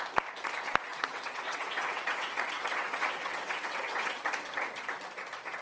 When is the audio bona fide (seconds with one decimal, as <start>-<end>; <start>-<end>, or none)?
0.0-0.9; 4.2-5.6